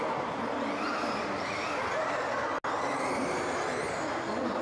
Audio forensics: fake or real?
real